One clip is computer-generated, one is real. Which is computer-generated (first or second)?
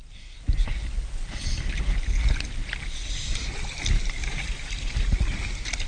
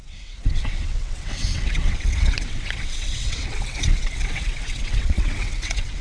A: second